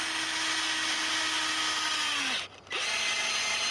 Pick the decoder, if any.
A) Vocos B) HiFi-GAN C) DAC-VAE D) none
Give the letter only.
D